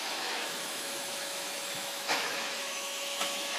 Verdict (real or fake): fake